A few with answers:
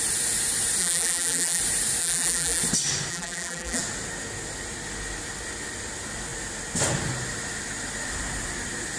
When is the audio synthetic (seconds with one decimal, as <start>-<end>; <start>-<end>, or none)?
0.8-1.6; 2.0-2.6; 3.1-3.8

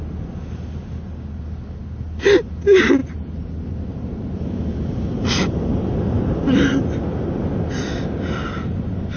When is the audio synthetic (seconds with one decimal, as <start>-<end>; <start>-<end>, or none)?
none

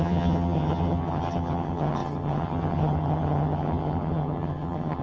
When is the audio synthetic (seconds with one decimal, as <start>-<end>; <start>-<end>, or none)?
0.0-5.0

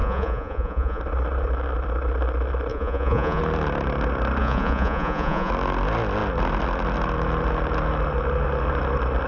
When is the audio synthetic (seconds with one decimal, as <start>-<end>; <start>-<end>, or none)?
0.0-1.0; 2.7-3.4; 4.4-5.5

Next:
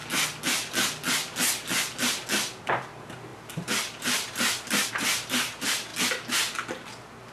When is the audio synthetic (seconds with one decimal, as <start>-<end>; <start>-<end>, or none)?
2.6-5.9

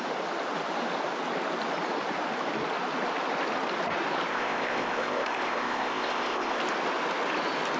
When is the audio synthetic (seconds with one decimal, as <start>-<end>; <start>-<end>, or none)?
4.3-6.6

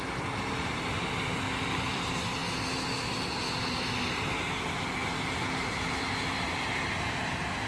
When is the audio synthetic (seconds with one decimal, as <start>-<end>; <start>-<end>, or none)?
none